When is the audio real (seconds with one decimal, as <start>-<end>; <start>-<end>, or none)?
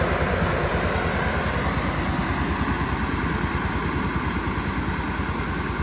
0.0-5.8